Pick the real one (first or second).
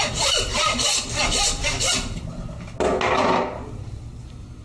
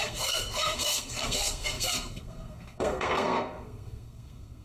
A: first